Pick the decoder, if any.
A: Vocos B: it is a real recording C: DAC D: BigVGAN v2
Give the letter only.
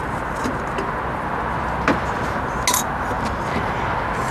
B